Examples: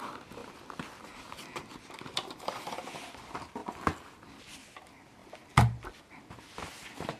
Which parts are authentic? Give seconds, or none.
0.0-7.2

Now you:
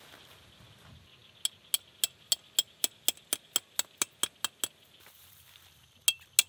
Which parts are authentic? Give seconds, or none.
0.0-6.5

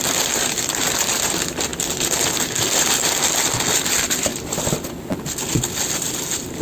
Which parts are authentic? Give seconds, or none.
0.0-6.6

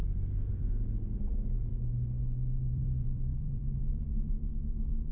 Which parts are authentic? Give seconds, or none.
0.0-0.5; 1.7-2.7